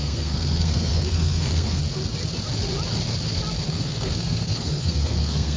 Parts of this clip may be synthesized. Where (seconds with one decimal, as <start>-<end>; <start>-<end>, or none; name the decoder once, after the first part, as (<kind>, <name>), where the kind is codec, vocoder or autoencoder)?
0.0-1.8 (codec, SNAC); 3.7-5.6